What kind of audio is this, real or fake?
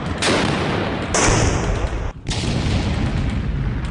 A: real